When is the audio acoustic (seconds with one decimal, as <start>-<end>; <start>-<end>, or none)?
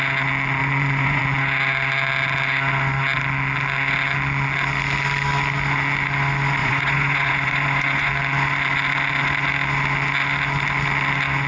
0.0-0.6; 1.2-6.6; 8.1-11.5